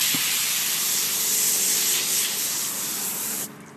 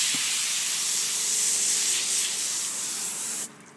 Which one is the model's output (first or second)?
second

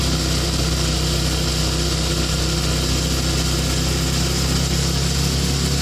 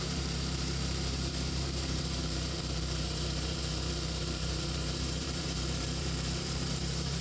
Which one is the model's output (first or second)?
second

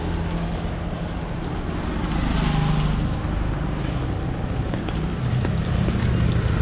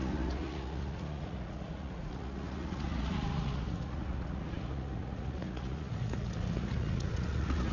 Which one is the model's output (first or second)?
second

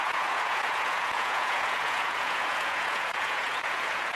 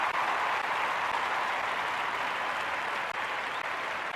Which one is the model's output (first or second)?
first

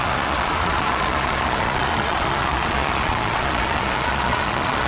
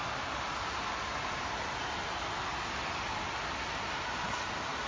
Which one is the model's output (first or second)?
first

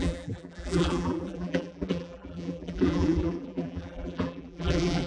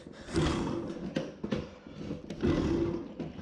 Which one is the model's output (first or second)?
first